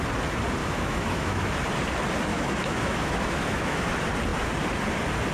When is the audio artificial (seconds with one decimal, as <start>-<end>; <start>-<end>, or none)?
0.6-1.5; 2.3-3.9